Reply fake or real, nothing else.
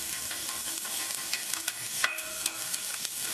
fake